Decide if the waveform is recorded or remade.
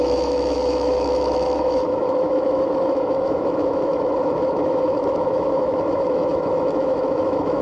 remade